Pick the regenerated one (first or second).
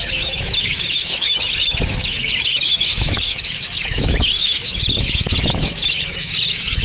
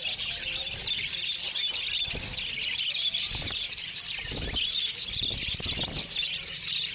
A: first